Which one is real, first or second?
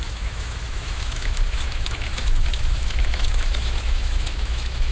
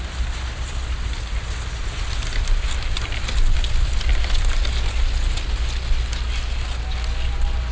second